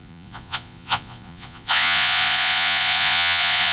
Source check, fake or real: fake